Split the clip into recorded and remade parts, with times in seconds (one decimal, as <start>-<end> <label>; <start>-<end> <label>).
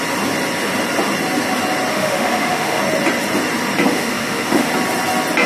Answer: 0.0-1.9 recorded; 1.9-2.8 remade; 2.8-3.9 recorded; 3.9-4.7 remade; 4.7-5.5 recorded